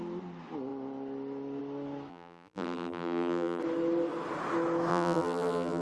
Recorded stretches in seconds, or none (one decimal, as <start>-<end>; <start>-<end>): 0.0-2.1; 3.6-4.9